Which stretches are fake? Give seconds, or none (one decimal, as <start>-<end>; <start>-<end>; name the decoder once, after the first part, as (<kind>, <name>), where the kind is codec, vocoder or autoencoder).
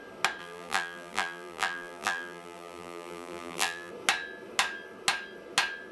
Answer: 0.4-3.9 (vocoder, BigVGAN v2)